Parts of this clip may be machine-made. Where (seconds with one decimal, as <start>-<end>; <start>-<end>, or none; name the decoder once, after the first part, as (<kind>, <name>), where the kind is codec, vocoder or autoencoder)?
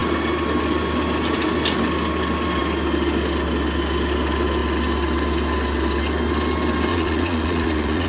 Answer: 6.9-8.1 (vocoder, Vocos)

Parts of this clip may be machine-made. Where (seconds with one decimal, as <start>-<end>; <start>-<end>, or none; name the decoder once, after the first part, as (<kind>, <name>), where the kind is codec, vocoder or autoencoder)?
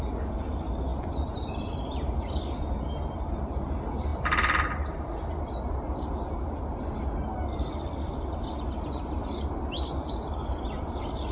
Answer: none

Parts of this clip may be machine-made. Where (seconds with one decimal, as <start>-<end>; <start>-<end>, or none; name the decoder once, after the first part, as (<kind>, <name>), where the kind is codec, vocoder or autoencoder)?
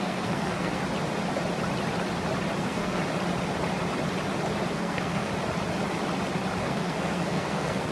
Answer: 0.0-0.8 (codec, SNAC); 2.6-3.0; 4.7-5.3; 6.6-7.9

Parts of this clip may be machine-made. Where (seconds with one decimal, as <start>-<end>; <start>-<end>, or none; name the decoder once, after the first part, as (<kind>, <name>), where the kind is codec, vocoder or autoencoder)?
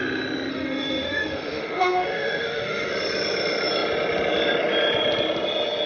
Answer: 0.5-2.9 (autoencoder, DAC-VAE)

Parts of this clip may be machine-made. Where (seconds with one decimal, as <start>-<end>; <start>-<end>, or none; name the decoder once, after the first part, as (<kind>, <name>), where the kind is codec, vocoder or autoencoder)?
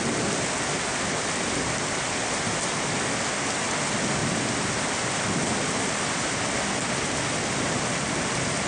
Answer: none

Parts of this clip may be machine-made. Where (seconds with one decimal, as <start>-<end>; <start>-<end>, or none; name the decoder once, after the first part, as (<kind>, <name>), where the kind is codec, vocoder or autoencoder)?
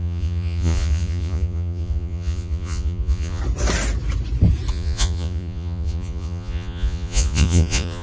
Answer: 0.0-3.4 (vocoder, Vocos); 4.7-8.0